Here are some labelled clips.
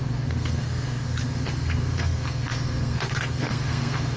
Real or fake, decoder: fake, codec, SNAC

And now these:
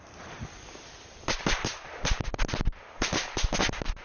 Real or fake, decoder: real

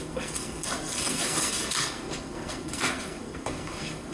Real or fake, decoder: fake, codec, SNAC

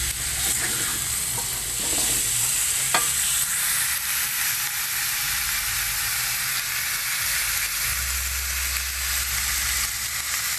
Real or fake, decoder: real